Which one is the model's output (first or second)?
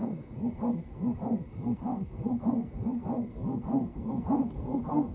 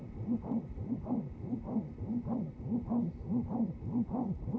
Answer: first